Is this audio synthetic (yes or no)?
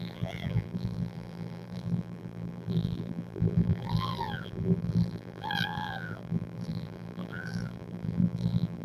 yes